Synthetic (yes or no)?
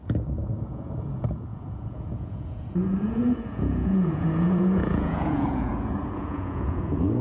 yes